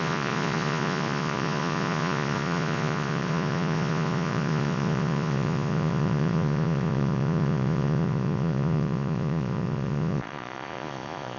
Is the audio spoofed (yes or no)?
yes